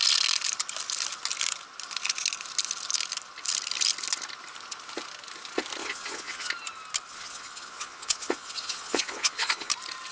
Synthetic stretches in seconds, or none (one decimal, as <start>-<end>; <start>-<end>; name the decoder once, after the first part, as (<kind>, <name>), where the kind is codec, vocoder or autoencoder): 5.8-6.5 (vocoder, Vocos); 7.1-9.7